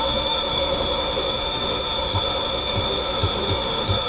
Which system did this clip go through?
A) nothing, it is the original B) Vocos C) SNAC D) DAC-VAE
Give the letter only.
D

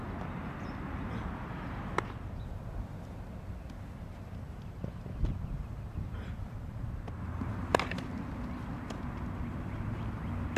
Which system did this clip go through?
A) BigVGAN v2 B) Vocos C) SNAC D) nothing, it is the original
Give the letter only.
D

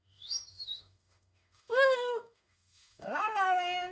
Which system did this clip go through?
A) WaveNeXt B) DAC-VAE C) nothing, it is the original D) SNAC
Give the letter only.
B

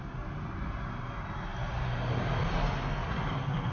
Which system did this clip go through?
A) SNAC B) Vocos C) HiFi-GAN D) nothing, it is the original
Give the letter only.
D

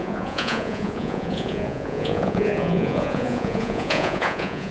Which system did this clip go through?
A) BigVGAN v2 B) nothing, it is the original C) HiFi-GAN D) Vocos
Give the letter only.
D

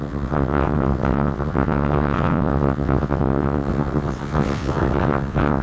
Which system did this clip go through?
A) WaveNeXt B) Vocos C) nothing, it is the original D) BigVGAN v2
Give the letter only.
A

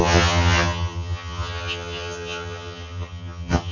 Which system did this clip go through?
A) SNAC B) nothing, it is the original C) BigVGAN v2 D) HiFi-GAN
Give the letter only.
D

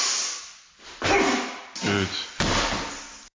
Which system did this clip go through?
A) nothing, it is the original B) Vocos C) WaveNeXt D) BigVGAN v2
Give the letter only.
A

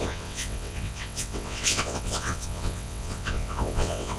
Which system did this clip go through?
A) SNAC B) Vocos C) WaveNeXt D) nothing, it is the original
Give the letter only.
C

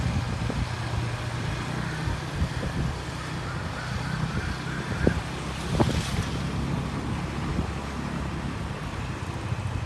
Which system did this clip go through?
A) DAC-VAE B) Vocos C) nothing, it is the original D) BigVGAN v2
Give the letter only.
C